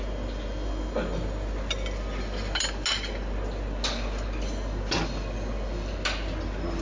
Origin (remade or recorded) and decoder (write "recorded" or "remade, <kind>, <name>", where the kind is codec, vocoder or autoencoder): recorded